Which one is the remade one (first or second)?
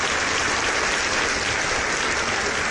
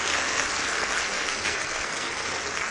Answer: second